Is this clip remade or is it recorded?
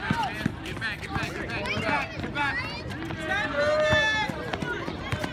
recorded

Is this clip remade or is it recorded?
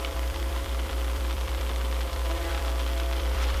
remade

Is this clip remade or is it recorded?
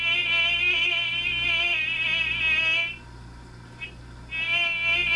recorded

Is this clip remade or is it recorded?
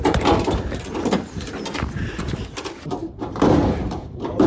remade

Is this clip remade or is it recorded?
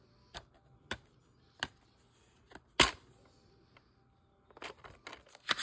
recorded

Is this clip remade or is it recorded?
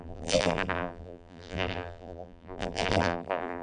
remade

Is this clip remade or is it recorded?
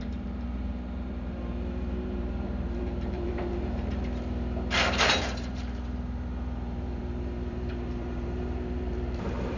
remade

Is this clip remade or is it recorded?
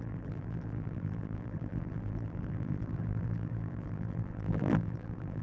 remade